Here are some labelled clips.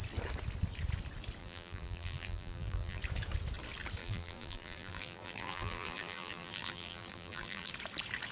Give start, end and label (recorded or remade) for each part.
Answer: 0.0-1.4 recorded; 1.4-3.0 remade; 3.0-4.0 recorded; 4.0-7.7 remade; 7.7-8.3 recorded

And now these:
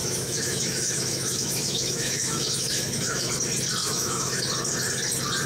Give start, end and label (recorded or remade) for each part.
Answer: 0.0-3.3 remade; 3.3-3.8 recorded; 3.8-4.4 remade; 4.4-5.5 recorded

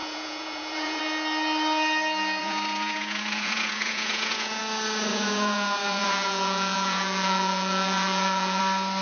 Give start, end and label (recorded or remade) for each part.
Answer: 0.0-1.0 remade; 1.0-2.4 recorded; 2.4-4.6 remade; 4.6-5.1 recorded; 5.1-8.6 remade; 8.6-9.0 recorded

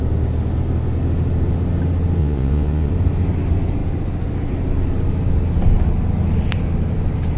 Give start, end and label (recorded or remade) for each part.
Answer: 0.0-2.2 recorded; 2.2-2.9 remade; 2.9-7.4 recorded

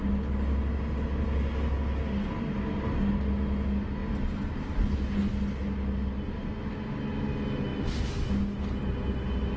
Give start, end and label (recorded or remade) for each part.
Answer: 0.0-9.6 recorded

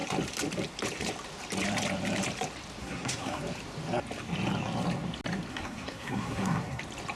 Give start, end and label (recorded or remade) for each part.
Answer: 0.0-2.8 recorded; 2.8-3.4 remade; 3.4-5.5 recorded; 5.5-6.8 remade; 6.8-7.2 recorded

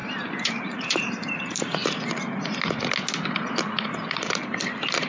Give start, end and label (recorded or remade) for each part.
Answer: 0.0-1.8 remade; 1.8-3.9 recorded; 3.9-5.1 remade

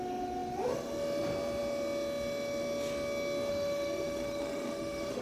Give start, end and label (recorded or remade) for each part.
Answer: 0.0-3.5 recorded; 3.5-5.2 remade